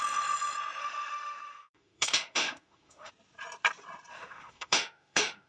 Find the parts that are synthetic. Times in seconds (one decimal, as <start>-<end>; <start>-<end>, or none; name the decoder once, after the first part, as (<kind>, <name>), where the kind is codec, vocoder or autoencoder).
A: 0.8-3.1 (autoencoder, DAC-VAE); 4.1-5.5